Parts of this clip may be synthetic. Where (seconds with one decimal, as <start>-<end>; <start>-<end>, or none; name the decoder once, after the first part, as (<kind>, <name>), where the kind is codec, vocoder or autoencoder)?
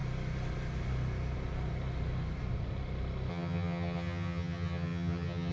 3.3-5.5 (vocoder, HiFi-GAN)